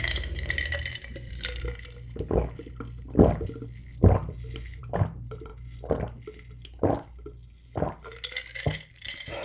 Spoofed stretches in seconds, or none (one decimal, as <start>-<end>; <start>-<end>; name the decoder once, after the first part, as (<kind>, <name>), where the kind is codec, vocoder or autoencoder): 0.0-1.5 (vocoder, BigVGAN v2); 4.8-5.5; 8.9-9.4